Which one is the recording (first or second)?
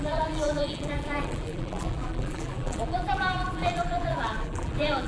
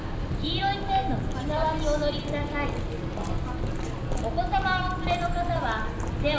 second